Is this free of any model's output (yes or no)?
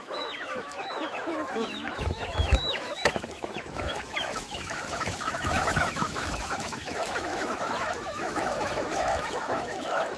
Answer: no